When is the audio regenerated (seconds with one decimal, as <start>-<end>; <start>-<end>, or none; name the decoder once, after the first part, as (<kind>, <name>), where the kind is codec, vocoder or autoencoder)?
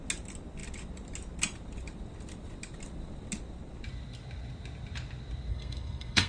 5.5-6.3 (codec, SNAC)